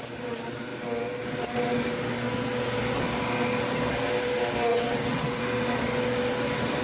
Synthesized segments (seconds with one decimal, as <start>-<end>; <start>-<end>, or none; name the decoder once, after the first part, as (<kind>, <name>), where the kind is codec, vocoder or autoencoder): 4.7-5.4 (vocoder, WaveNeXt)